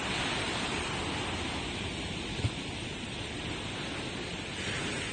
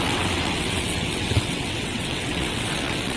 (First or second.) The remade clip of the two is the second